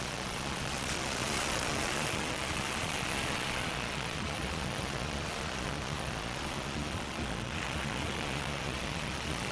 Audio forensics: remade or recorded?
remade